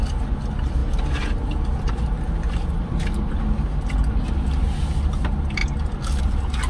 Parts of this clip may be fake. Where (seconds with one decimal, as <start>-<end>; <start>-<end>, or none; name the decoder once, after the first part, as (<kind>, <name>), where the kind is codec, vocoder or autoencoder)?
none